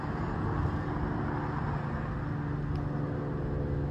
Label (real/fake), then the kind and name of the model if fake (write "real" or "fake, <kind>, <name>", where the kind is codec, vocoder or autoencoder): real